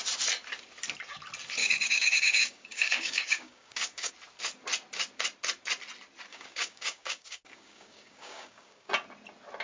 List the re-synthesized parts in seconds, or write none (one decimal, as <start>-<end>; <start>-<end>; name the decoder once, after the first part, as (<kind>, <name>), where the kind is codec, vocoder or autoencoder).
1.6-4.1 (codec, DAC); 6.3-8.9